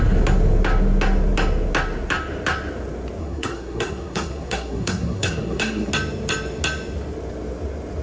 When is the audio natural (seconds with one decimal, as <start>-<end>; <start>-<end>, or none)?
0.0-3.2; 5.9-8.0